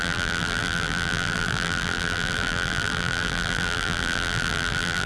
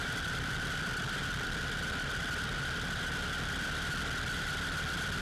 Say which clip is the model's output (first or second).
first